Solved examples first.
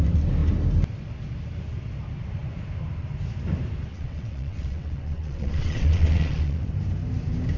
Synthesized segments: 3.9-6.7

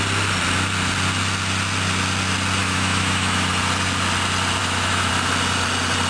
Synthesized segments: 2.6-3.5; 4.6-5.1

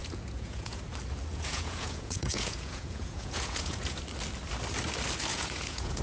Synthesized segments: 0.0-0.8; 1.3-4.0; 5.3-6.0

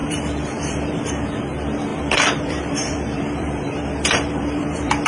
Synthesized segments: 0.0-1.1; 1.9-5.1

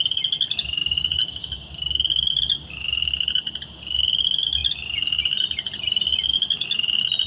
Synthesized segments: none